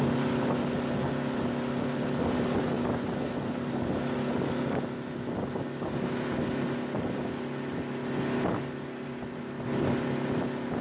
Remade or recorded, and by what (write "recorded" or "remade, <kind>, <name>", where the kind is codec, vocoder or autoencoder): recorded